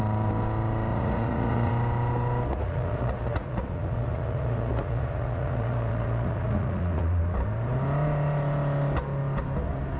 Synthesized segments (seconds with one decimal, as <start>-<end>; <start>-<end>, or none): 0.9-1.7; 2.5-7.2